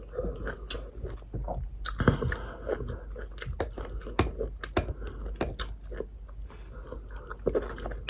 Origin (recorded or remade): recorded